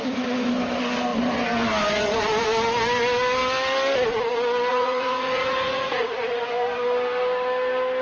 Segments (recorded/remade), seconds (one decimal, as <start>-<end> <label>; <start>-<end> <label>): 0.0-4.7 recorded; 4.7-6.4 remade; 6.4-8.0 recorded